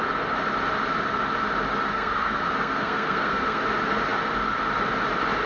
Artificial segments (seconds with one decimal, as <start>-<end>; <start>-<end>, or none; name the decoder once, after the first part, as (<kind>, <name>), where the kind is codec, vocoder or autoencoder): 1.9-3.6 (codec, SNAC)